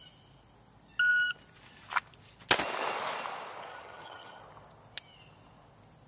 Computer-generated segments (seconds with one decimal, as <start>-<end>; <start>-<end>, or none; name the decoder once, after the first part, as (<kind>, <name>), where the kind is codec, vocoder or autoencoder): 3.7-4.4 (vocoder, HiFi-GAN)

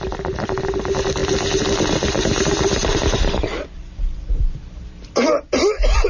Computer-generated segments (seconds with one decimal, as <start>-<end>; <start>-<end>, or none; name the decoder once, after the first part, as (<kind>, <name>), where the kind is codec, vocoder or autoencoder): none

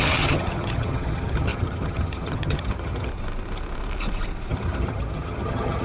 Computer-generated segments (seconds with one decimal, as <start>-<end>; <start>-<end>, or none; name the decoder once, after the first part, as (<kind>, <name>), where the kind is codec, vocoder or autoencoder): 0.0-3.1 (vocoder, HiFi-GAN); 4.5-5.8